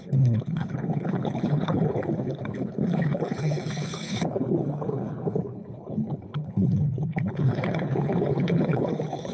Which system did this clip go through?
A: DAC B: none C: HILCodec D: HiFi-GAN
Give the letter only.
C